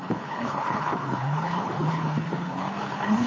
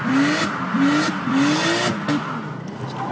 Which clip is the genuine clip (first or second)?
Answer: second